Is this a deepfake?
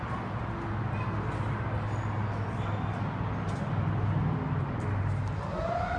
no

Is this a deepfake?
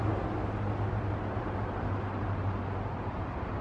no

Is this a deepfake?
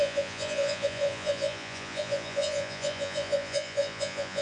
yes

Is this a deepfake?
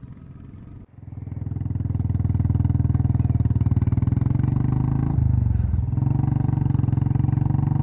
no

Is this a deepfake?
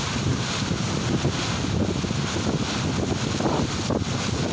no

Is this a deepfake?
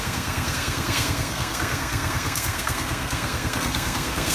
yes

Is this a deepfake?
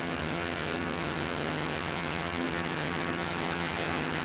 yes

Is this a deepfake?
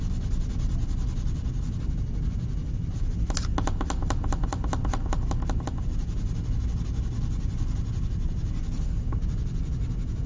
no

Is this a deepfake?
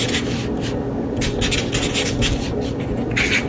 no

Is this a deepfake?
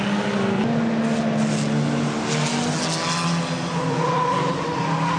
no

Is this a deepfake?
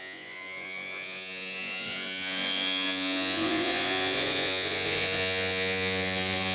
yes